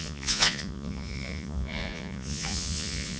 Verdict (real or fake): fake